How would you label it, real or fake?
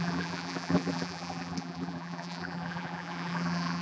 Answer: fake